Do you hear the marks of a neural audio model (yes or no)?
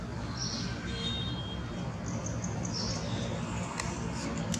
no